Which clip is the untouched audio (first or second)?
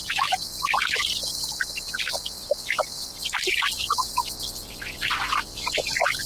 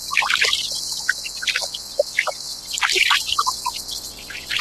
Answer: first